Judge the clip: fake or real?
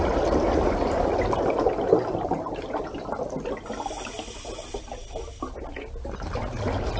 real